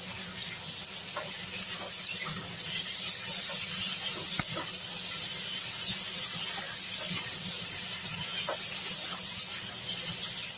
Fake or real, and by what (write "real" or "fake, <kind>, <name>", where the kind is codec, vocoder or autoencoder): real